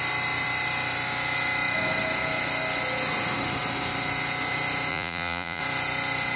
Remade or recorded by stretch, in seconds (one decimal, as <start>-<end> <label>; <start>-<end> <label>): 0.0-4.9 recorded; 4.9-5.6 remade; 5.6-6.4 recorded